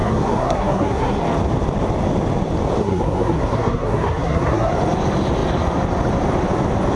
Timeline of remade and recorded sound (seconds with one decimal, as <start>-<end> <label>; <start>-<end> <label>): 0.0-1.2 remade; 1.2-2.8 recorded; 2.8-4.7 remade; 4.7-7.0 recorded